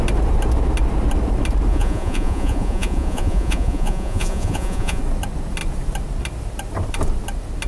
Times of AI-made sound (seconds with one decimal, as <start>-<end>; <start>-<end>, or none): 1.7-5.0